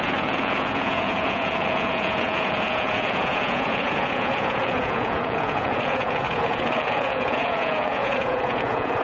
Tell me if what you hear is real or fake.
fake